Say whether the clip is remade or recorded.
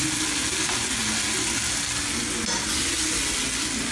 recorded